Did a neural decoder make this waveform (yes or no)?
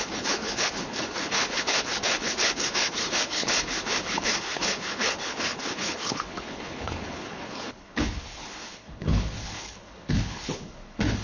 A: yes